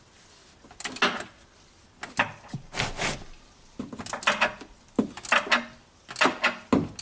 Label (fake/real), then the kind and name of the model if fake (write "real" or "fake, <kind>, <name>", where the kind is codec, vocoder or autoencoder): real